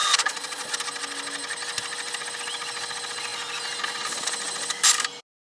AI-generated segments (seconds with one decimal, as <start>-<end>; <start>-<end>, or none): 0.0-0.7